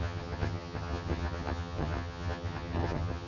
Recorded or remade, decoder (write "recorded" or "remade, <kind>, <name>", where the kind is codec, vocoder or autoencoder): remade, vocoder, HiFi-GAN